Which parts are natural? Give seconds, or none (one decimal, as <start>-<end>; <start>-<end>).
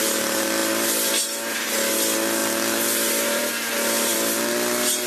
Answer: 0.0-0.6; 1.1-2.4; 4.4-5.1